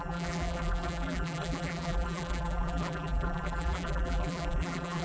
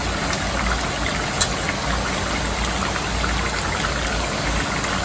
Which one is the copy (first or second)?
first